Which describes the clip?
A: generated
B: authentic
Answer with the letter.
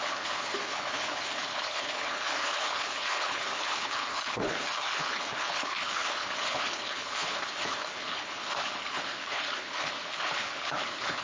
A